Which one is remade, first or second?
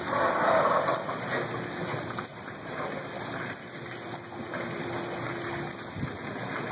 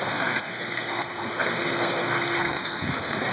second